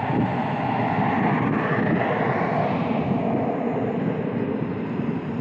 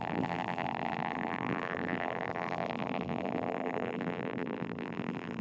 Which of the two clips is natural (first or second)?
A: first